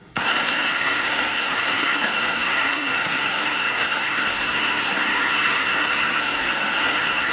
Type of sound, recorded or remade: remade